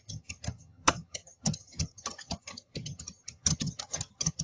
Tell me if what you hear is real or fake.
fake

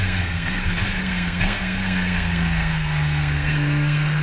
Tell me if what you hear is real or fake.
fake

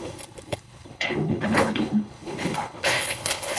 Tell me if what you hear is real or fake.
fake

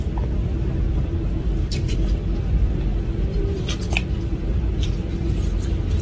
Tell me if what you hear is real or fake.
real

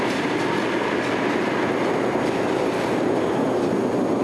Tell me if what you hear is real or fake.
real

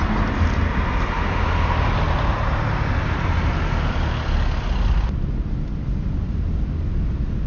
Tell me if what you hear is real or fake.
real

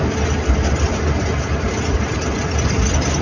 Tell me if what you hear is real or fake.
real